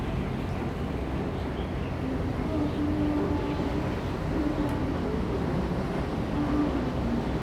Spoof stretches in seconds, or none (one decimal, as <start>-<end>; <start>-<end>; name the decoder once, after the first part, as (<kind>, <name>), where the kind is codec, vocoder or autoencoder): none